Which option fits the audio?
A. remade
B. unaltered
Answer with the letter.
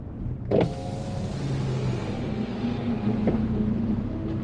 B